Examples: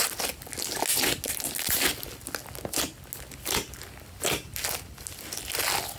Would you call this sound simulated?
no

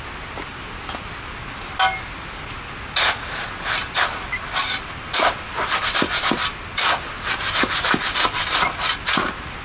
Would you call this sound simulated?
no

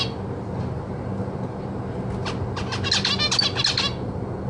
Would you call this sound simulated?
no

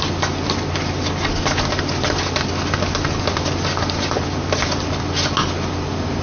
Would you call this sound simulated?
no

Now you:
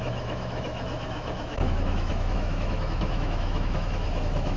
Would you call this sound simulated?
yes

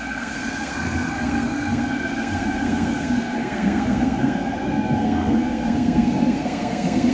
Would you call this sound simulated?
yes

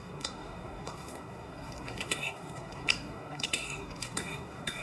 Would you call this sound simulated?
yes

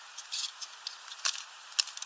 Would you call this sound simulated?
no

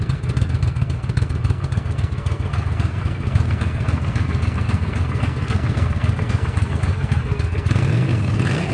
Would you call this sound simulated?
yes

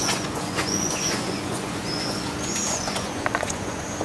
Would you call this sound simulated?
yes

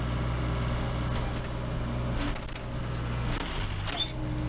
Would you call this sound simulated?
no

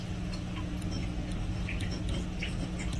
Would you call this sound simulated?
no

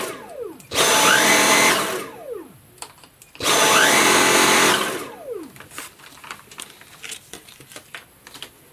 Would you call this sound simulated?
no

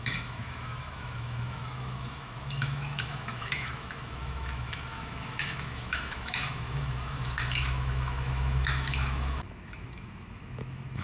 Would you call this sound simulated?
yes